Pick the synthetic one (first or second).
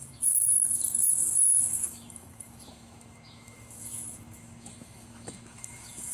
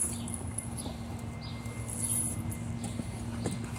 first